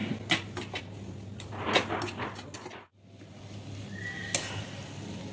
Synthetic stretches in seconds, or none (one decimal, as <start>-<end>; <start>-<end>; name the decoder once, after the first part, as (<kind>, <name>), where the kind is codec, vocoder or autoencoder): none